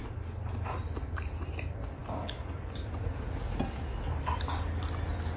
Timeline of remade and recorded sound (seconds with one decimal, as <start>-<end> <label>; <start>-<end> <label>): 0.0-5.4 recorded